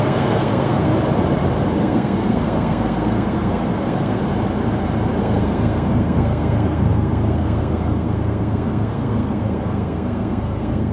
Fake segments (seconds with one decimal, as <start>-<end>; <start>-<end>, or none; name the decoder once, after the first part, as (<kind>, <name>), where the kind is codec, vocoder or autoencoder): 0.0-0.9 (codec, SNAC); 1.8-4.2; 5.2-10.9